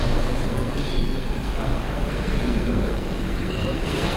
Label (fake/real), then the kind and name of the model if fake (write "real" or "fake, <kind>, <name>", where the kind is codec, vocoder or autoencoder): fake, codec, SNAC